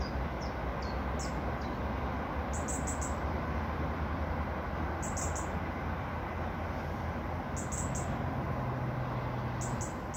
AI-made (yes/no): no